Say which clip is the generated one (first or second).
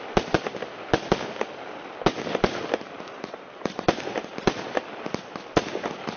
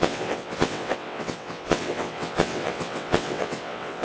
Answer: second